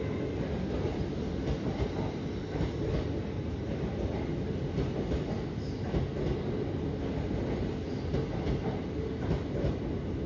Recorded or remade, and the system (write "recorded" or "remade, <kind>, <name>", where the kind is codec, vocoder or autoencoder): recorded